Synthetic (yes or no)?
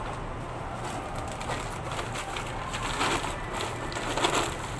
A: no